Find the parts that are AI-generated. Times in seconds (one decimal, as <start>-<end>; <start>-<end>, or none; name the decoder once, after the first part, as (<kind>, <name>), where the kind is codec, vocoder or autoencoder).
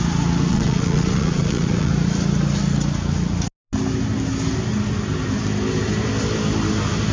0.5-1.9 (vocoder, Vocos)